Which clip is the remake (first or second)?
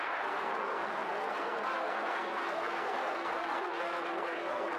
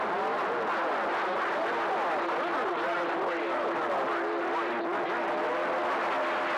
first